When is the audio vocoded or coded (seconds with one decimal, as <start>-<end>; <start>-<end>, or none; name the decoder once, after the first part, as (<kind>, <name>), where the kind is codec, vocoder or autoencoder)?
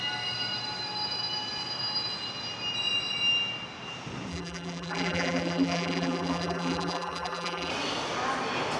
4.3-7.7 (vocoder, BigVGAN v2)